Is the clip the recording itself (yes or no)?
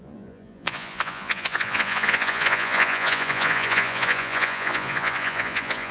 no